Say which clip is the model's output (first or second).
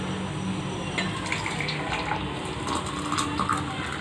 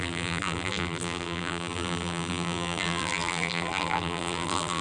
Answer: second